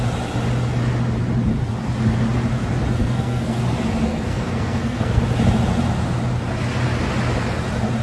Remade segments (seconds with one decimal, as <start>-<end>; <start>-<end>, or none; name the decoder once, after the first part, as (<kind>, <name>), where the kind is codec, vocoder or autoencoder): 3.0-3.6 (codec, SNAC); 4.1-5.2